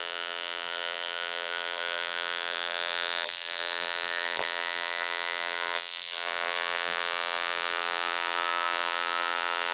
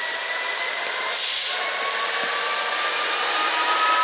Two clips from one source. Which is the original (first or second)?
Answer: second